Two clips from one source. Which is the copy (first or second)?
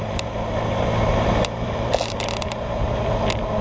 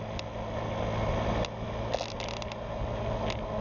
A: first